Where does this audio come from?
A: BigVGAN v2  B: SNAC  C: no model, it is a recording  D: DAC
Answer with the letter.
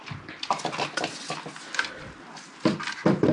C